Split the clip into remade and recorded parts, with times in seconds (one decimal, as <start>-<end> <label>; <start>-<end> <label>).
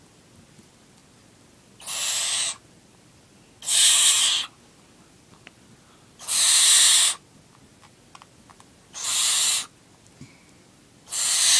0.0-11.6 recorded